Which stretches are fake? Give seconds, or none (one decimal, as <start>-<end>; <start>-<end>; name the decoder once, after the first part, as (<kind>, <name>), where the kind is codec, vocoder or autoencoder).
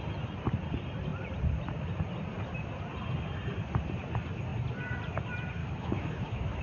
5.6-6.6 (autoencoder, DAC-VAE)